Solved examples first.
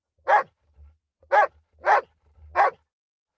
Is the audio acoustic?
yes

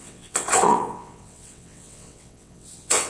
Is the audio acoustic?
no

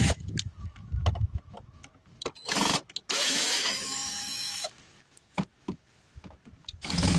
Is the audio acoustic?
no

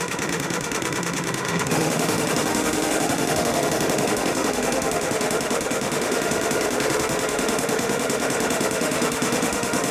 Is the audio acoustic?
no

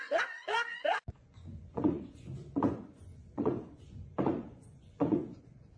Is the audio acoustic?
no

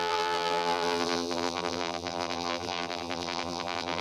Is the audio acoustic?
no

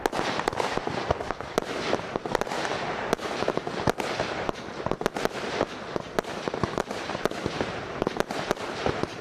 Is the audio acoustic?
yes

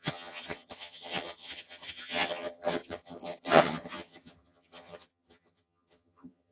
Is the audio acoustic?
no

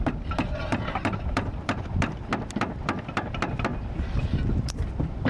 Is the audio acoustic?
no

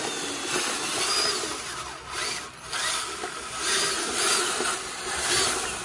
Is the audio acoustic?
yes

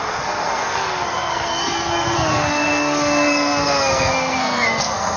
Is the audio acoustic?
no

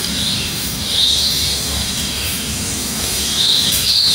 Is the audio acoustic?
no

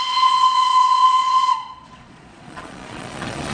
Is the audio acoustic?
no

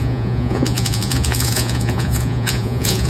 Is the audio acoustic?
no